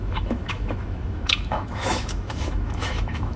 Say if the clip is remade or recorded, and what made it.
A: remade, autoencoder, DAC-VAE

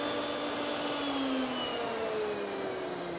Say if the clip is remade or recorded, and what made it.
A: recorded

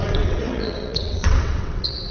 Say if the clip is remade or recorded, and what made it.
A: remade, vocoder, WaveNeXt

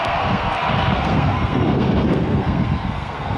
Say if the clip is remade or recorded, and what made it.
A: remade, codec, SNAC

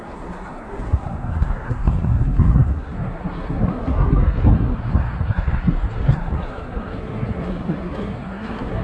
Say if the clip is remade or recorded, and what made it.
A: remade, codec, SNAC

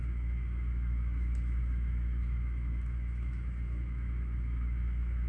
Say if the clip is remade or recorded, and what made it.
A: remade, autoencoder, DAC-VAE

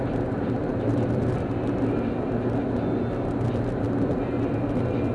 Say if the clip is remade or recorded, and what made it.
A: recorded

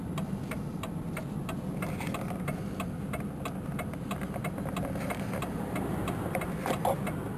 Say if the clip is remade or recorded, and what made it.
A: recorded